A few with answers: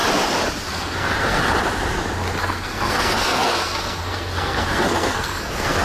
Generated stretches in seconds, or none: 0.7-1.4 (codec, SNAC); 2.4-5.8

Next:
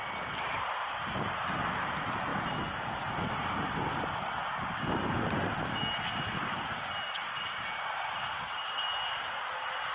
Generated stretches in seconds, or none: none